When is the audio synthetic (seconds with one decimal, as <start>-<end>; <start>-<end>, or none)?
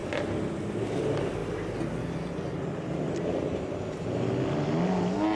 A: none